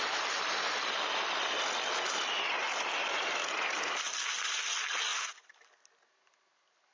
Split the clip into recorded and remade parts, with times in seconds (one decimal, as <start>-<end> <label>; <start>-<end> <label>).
0.0-6.9 recorded